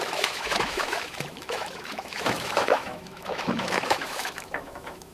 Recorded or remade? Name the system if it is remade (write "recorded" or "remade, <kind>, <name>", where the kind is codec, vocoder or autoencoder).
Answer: remade, autoencoder, DAC-VAE